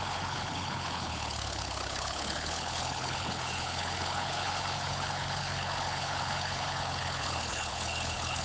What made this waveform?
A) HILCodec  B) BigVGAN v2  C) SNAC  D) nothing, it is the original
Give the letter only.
A